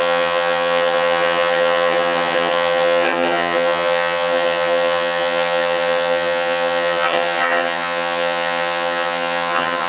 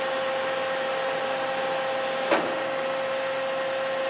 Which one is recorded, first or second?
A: second